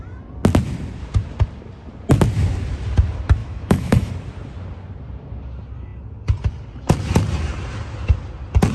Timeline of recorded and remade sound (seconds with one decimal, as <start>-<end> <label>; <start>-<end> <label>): 0.0-3.4 recorded; 3.4-4.1 remade; 4.1-8.7 recorded